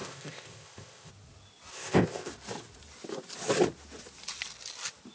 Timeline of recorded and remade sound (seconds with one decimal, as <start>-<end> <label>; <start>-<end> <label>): 0.0-1.1 remade; 1.1-1.7 recorded; 1.7-2.3 remade; 2.3-5.1 recorded